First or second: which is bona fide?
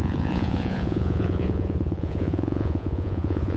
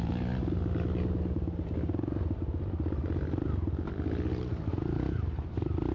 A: second